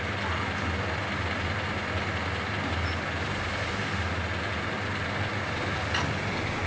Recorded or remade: recorded